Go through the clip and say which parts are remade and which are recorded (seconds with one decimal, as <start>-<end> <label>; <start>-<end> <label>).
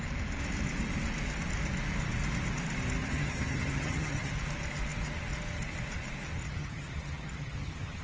0.0-3.0 recorded; 3.0-4.3 remade; 4.3-6.4 recorded; 6.4-8.0 remade